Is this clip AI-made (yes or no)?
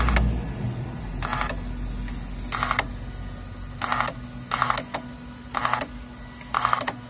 no